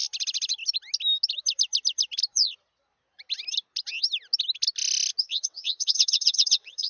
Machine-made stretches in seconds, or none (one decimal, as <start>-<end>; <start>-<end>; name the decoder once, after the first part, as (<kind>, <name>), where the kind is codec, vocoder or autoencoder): 5.2-6.9 (vocoder, WaveNeXt)

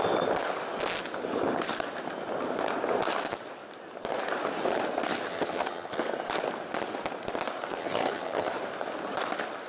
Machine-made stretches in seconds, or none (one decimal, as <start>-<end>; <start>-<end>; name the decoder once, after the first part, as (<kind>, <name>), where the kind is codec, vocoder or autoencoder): 5.3-6.0 (vocoder, HiFi-GAN); 7.8-8.5

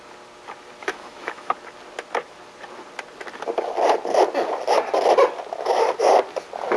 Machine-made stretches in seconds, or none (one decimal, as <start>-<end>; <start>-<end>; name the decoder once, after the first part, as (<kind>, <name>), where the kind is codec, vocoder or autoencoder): 0.8-1.5 (autoencoder, DAC-VAE)